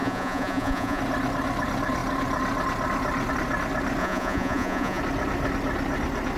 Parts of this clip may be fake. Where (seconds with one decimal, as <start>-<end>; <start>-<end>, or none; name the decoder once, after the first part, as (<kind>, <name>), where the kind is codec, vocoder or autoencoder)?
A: 0.0-1.0 (vocoder, Vocos); 4.0-5.0